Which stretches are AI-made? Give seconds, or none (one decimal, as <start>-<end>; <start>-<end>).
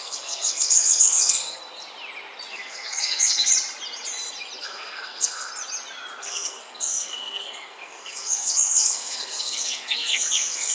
0.0-1.6; 2.5-3.5; 4.6-5.5; 6.2-10.7